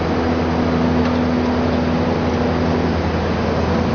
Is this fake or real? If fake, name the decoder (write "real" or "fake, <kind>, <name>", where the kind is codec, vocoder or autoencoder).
real